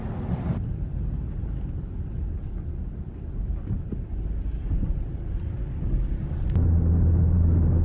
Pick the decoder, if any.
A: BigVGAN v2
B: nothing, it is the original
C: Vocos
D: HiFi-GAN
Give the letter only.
B